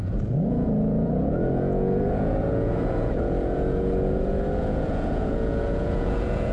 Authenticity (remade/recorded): remade